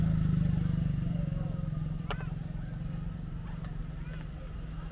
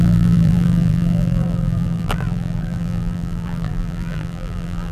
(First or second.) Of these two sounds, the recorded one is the first